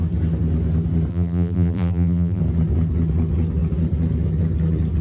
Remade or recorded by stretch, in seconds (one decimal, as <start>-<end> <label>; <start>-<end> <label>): 0.0-1.1 recorded; 1.1-2.4 remade; 2.4-5.0 recorded